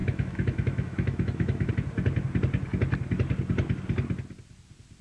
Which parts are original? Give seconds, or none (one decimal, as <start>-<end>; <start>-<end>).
1.7-5.0